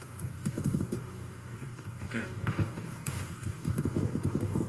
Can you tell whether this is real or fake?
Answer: fake